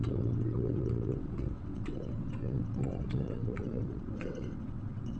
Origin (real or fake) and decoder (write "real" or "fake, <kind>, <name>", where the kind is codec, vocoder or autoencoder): fake, vocoder, WaveNeXt